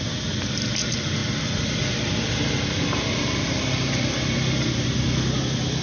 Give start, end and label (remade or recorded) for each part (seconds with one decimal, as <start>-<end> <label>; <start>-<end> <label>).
0.0-5.8 recorded